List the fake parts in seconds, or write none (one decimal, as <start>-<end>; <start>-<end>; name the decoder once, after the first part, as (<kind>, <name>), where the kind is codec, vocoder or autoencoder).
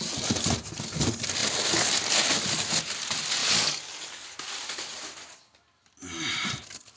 3.4-4.4 (codec, DAC)